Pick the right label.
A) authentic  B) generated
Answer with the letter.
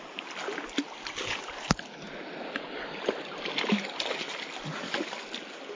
A